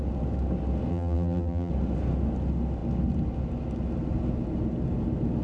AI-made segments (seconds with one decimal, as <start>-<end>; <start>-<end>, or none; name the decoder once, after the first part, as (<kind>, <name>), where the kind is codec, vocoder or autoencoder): 0.9-1.7 (vocoder, BigVGAN v2)